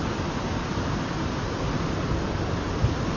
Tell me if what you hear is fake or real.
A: real